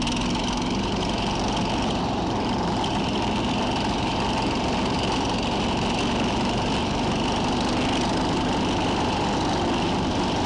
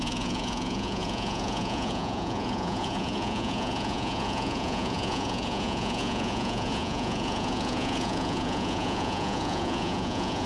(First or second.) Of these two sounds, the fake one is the second